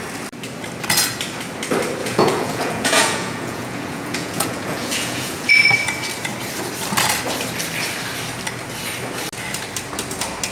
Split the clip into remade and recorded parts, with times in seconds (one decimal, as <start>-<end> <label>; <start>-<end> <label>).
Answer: 0.0-2.0 recorded; 2.0-5.5 remade; 5.5-10.5 recorded